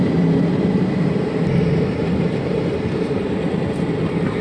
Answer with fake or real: real